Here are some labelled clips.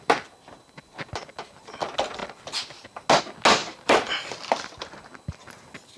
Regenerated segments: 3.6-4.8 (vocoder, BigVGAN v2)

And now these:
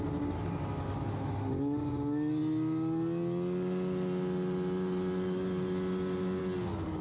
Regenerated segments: none

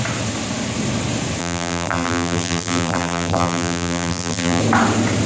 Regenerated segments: 1.4-4.6 (vocoder, BigVGAN v2)

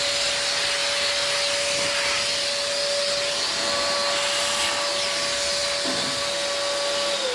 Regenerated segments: none

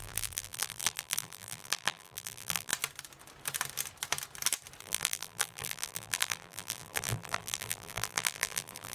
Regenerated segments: 0.0-2.7 (vocoder, BigVGAN v2); 4.8-8.9

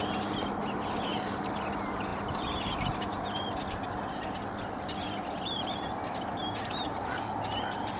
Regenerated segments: 1.1-1.7 (vocoder, BigVGAN v2); 2.1-2.6; 6.4-7.3

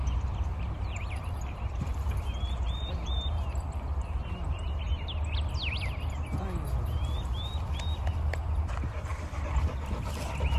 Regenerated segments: 0.0-4.7 (vocoder, BigVGAN v2); 9.1-9.6